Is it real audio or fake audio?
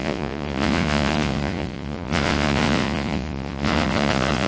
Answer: fake